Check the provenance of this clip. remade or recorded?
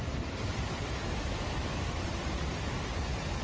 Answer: recorded